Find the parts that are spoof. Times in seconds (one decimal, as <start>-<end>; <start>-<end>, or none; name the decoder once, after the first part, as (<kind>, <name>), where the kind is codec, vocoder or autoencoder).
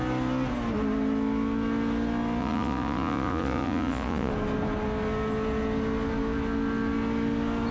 2.4-4.3 (vocoder, Vocos)